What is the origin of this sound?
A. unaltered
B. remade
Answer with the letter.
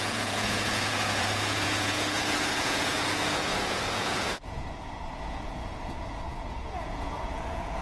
B